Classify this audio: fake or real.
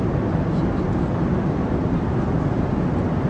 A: real